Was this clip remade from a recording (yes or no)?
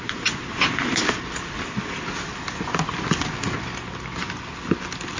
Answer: no